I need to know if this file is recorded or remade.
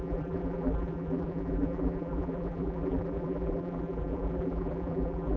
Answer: remade